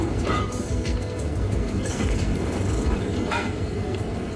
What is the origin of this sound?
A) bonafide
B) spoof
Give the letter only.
B